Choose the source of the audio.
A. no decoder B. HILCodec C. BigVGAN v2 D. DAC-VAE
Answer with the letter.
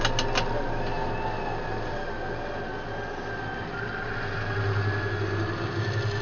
A